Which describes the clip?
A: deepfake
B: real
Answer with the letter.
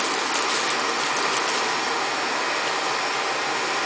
B